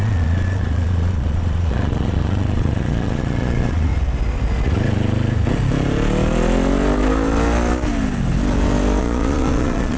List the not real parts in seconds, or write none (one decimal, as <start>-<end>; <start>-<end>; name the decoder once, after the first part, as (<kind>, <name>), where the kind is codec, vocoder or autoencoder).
0.0-3.9 (vocoder, Vocos); 9.0-10.0